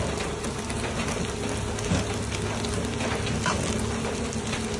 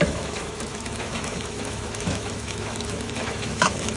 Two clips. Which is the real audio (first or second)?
first